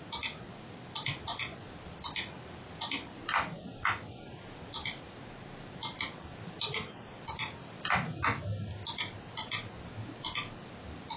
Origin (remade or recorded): recorded